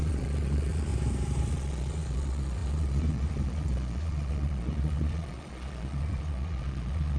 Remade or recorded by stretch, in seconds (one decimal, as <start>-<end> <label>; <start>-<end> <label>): 0.0-0.9 remade; 0.9-1.5 recorded; 1.5-7.2 remade